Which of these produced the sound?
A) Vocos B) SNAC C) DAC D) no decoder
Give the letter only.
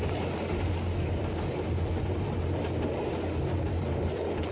D